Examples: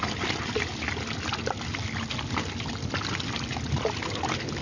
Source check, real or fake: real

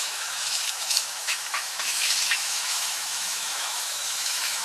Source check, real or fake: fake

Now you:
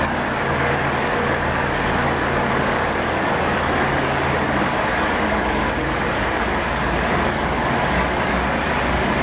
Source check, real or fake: fake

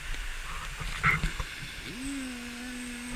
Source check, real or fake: real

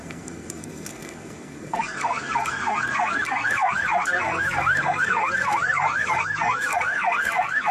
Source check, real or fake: fake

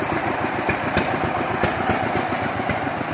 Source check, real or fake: real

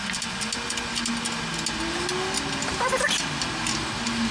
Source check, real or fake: real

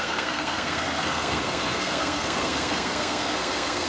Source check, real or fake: fake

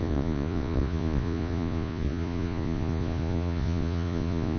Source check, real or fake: fake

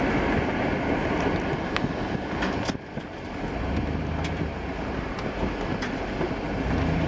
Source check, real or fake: real